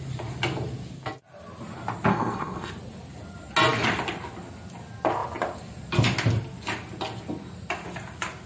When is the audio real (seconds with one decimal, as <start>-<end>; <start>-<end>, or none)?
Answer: 0.0-2.1; 2.7-8.5